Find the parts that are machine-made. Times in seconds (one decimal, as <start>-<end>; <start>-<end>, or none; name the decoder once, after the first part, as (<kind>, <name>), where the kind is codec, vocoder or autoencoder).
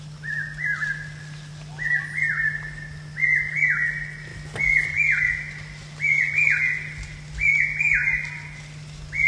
none